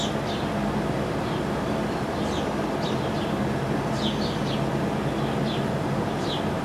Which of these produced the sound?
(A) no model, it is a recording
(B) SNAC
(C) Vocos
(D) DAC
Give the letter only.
A